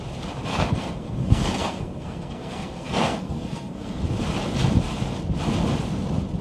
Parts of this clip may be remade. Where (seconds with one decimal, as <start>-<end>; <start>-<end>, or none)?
0.5-4.0